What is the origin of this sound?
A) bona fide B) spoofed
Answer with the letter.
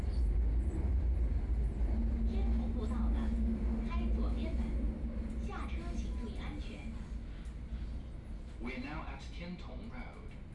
A